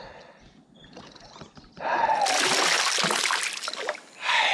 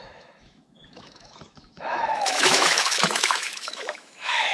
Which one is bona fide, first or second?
first